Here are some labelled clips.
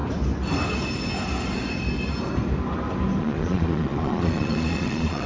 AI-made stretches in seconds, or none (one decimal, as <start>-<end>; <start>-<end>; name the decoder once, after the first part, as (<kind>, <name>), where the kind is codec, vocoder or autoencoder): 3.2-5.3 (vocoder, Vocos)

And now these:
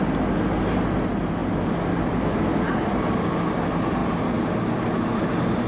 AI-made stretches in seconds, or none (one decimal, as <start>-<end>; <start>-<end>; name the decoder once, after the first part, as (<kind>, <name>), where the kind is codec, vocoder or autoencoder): none

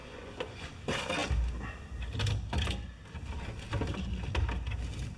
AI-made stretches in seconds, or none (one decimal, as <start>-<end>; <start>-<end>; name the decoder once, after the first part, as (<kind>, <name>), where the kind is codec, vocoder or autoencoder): 0.0-0.7 (vocoder, Vocos)